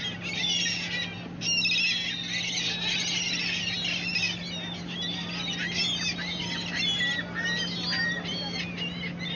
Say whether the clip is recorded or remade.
recorded